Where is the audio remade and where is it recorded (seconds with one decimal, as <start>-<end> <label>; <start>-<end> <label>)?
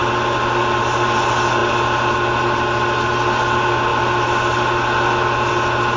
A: 0.0-6.0 recorded